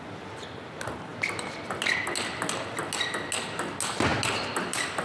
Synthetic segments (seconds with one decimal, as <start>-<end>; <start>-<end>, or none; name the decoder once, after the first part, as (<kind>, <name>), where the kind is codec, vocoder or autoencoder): none